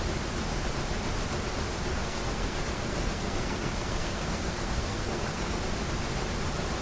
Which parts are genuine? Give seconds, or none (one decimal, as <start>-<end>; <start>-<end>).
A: 0.0-2.0; 5.6-6.8